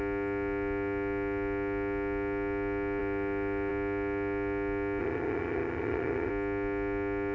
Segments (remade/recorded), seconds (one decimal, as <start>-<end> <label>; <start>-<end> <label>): 0.0-5.0 recorded; 5.0-6.3 remade; 6.3-7.3 recorded